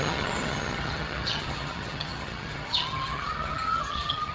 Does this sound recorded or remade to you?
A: remade